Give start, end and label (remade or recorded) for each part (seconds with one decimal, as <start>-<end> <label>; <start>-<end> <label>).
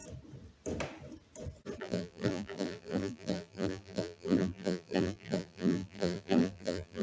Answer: 0.0-1.8 recorded; 1.8-7.0 remade